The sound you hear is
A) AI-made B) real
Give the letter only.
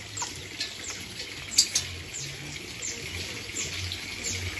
B